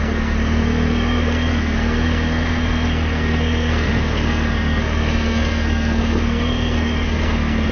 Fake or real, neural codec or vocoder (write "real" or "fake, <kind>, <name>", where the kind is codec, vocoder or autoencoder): fake, codec, SNAC